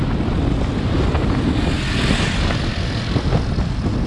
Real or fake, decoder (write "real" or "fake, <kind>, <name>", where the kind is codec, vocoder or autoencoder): real